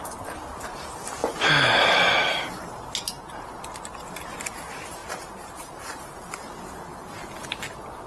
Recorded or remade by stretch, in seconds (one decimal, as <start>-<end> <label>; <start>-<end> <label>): 0.0-5.0 recorded; 5.0-6.3 remade; 6.3-6.9 recorded; 6.9-7.6 remade; 7.6-8.1 recorded